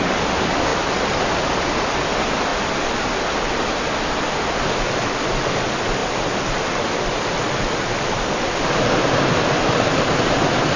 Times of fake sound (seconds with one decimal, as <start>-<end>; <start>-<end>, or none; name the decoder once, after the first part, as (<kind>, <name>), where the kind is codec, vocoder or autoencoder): none

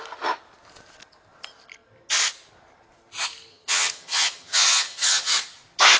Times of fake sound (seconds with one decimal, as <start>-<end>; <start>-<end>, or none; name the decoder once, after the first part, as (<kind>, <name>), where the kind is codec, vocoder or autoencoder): 3.5-5.3 (vocoder, HiFi-GAN)

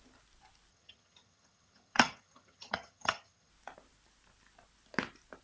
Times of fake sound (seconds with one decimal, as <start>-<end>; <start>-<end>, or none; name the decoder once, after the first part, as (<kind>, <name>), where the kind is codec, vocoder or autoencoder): 0.7-3.5 (vocoder, HiFi-GAN)

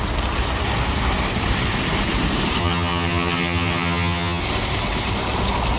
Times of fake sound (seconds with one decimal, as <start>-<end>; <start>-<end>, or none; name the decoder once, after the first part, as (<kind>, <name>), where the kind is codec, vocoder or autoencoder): 2.6-4.4 (vocoder, HiFi-GAN)

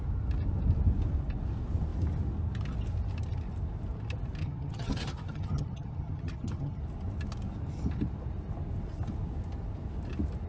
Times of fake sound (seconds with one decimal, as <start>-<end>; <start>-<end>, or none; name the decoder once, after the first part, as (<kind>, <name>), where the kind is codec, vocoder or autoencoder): 4.4-6.8 (vocoder, HiFi-GAN)

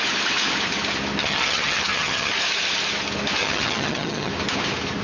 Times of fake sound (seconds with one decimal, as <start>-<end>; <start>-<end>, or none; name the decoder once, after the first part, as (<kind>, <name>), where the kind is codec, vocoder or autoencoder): 1.2-2.3 (vocoder, HiFi-GAN); 3.4-4.3